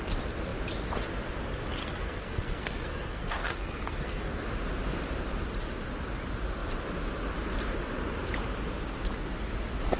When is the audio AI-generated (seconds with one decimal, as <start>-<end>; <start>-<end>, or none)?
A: 1.8-4.4